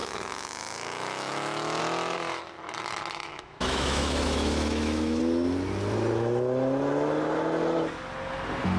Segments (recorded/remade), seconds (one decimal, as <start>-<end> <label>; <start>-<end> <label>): 0.0-1.8 remade; 1.8-3.2 recorded; 3.2-5.2 remade; 5.2-8.8 recorded